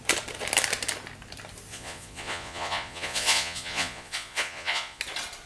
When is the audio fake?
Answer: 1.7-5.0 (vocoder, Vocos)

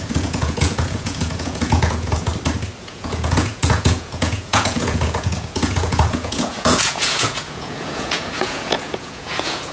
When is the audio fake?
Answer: 0.0-2.3 (vocoder, Vocos); 2.8-9.7

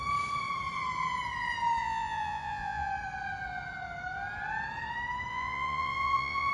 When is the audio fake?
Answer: 1.8-2.9 (vocoder, Vocos); 5.3-6.5

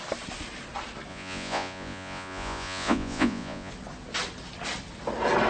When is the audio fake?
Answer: 1.1-3.7 (vocoder, Vocos)

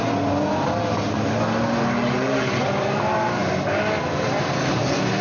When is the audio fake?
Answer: none

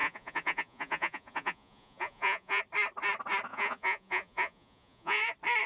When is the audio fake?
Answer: 0.0-2.6 (vocoder, Vocos); 3.5-5.3

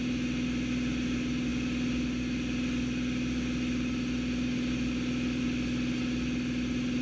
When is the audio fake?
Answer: none